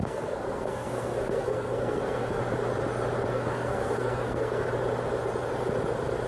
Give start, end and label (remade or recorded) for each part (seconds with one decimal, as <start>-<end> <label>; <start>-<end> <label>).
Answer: 0.0-2.4 remade; 2.4-3.3 recorded; 3.3-4.7 remade; 4.7-6.3 recorded